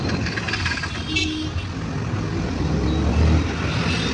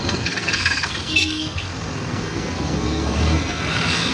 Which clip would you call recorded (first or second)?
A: first